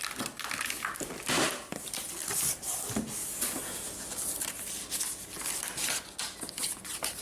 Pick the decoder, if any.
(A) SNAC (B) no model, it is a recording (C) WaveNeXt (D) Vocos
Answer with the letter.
B